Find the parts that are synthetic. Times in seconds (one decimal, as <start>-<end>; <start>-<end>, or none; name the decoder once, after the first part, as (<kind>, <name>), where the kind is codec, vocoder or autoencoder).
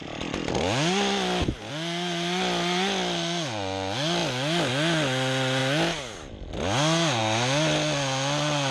none